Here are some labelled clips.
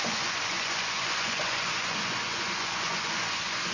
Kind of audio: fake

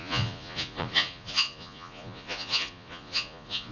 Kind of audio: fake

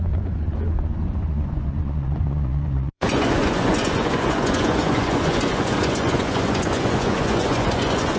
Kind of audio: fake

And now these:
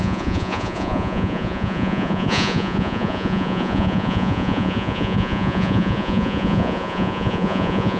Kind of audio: fake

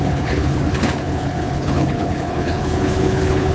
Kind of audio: fake